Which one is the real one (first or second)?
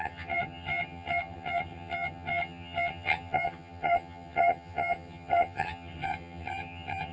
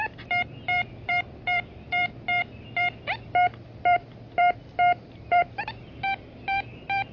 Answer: second